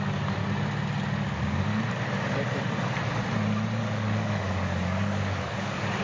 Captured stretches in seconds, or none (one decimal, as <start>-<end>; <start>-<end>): 0.4-1.2; 1.7-3.8